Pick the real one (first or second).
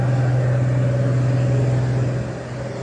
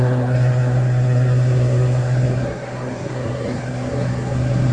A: first